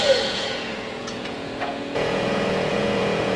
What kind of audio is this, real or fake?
fake